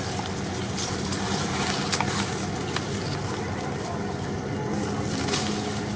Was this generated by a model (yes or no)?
no